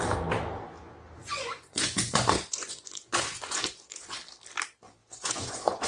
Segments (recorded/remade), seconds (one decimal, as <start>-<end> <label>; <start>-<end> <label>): 0.0-1.2 recorded; 1.2-4.2 remade; 4.2-5.0 recorded; 5.0-5.9 remade